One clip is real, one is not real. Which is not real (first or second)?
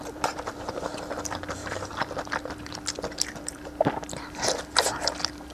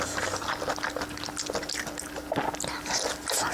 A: first